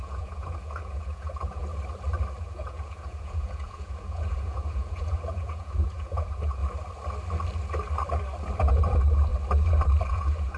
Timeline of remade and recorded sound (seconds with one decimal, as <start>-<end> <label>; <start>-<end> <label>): 0.0-1.6 remade; 1.6-2.4 recorded; 2.4-6.6 remade; 6.6-8.6 recorded; 8.6-9.3 remade; 9.3-10.1 recorded; 10.1-10.6 remade